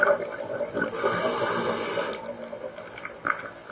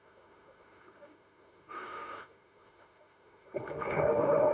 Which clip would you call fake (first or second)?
second